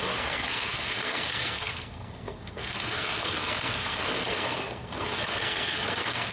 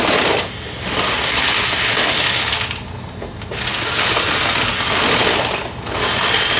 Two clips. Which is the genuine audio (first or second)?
second